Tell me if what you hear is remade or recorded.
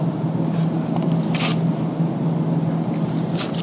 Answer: recorded